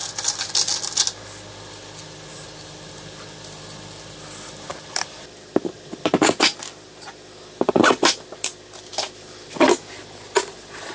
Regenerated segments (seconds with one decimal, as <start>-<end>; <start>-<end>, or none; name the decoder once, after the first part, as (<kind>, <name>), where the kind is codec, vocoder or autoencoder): 4.7-5.9 (vocoder, BigVGAN v2); 8.9-9.8